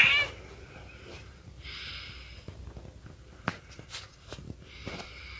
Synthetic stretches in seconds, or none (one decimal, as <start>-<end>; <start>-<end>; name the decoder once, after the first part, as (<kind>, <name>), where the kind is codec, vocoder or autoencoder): none